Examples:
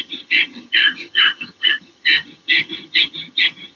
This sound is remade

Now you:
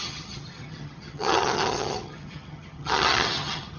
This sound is remade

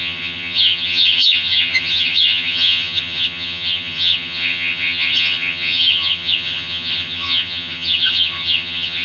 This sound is remade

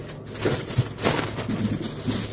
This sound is recorded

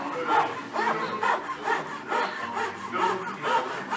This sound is recorded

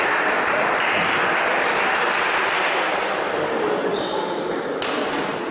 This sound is recorded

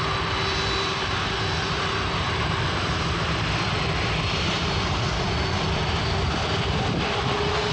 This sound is recorded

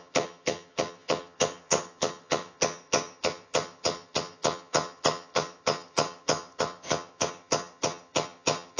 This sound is remade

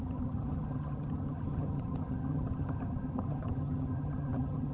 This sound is remade